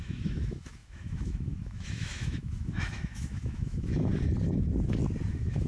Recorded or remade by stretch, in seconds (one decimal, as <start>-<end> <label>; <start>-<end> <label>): 0.0-4.1 remade; 4.1-5.3 recorded; 5.3-5.7 remade